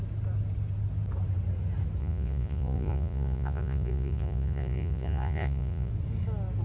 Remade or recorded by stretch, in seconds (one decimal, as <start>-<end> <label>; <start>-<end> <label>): 0.0-2.0 recorded; 2.0-5.9 remade; 5.9-6.6 recorded